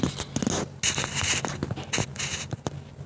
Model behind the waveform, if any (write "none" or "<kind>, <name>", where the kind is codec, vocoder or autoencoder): none